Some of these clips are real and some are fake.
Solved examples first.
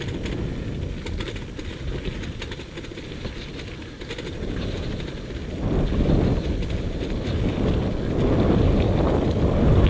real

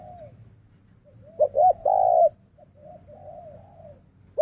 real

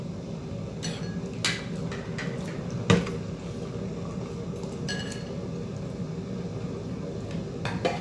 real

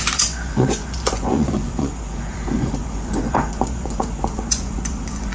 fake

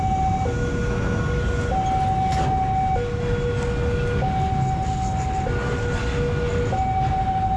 real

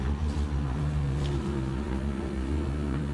fake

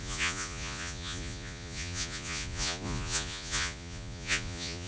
fake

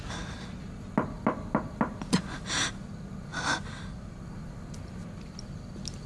real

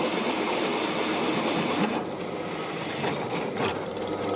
real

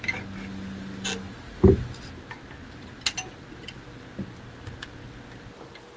real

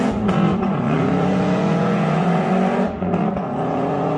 fake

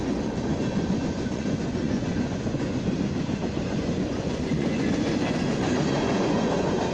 fake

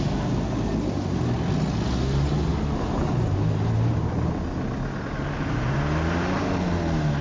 real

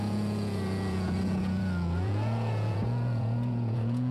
fake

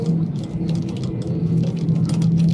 real